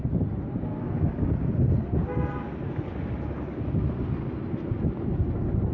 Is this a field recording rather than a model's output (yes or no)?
yes